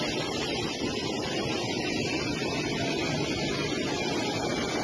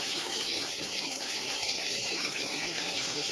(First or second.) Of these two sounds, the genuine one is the first